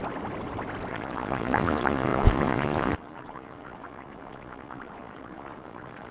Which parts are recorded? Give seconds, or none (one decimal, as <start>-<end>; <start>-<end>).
0.0-0.9